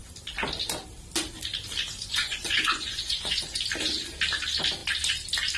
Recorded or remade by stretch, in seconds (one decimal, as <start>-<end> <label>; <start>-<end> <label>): 0.0-2.1 recorded; 2.1-3.6 remade; 3.6-5.6 recorded